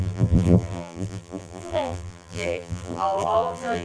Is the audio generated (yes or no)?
yes